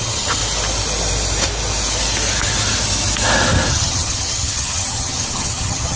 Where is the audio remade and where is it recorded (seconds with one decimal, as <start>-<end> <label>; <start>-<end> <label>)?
0.0-0.4 remade; 0.4-3.7 recorded; 3.7-6.0 remade